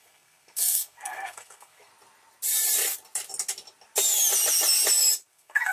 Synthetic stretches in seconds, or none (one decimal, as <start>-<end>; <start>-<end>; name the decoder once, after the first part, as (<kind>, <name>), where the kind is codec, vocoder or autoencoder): 0.0-1.9 (codec, SNAC); 5.3-5.7